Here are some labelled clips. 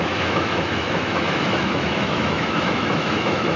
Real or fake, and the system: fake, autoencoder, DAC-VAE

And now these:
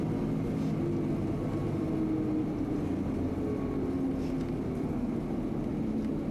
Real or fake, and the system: real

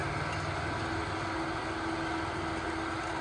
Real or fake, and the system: real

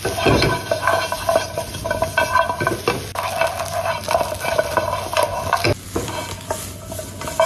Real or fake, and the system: real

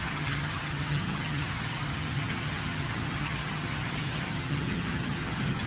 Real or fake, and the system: fake, vocoder, HiFi-GAN